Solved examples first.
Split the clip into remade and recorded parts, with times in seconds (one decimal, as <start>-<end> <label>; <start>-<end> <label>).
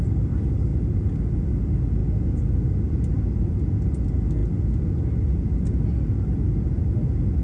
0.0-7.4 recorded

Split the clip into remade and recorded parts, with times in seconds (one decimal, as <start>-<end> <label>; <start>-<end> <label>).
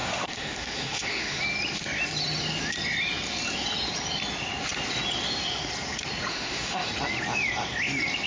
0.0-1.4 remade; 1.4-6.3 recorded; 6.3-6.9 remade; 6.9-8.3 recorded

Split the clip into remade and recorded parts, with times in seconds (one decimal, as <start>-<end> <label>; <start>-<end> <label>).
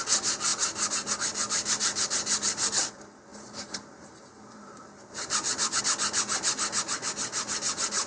0.0-3.3 recorded; 3.3-5.8 remade; 5.8-8.1 recorded